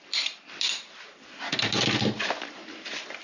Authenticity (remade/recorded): recorded